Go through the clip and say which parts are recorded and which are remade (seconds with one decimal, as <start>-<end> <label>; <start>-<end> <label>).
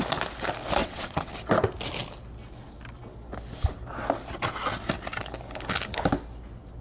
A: 0.0-0.8 recorded; 0.8-1.3 remade; 1.3-6.8 recorded